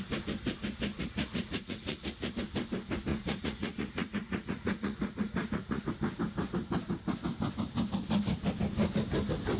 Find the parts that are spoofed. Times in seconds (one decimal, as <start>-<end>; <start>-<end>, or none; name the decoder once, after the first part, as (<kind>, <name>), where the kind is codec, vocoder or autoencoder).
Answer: 0.9-2.3 (vocoder, Vocos); 3.1-5.9